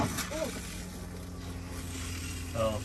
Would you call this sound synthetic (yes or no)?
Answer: no